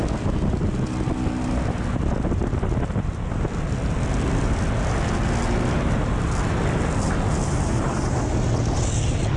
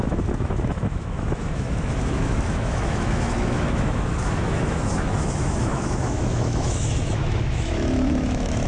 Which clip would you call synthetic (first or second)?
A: second